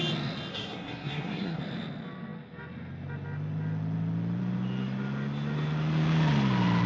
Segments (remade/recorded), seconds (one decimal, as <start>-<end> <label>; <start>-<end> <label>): 0.0-0.5 recorded; 0.5-1.6 remade; 1.6-6.9 recorded